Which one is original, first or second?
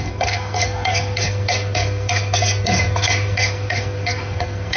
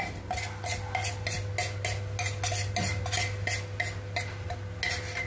second